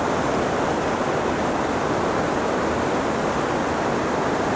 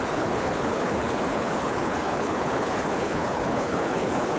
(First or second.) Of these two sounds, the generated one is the second